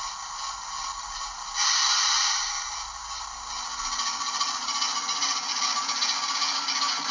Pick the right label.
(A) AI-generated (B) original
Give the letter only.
B